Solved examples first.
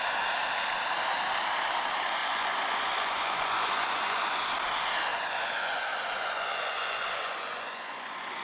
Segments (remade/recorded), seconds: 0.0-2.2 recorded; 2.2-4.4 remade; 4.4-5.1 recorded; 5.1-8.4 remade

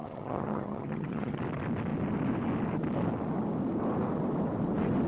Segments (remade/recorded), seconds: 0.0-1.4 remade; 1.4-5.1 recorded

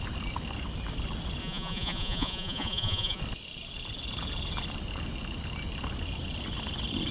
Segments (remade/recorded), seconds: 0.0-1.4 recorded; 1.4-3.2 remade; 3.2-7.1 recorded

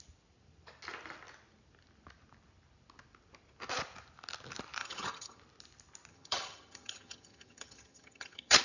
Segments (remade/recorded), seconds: 0.0-4.8 recorded; 4.8-5.4 remade; 5.4-6.1 recorded; 6.1-8.6 remade

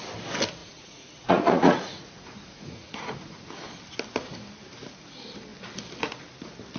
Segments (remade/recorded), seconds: 0.0-0.6 recorded; 0.6-3.5 remade; 3.5-6.8 recorded